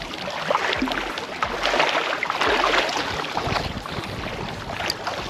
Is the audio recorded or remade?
recorded